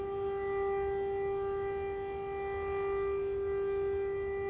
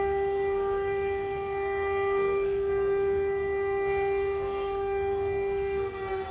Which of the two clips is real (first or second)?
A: first